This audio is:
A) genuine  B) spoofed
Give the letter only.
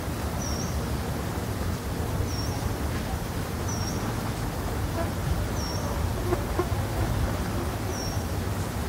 A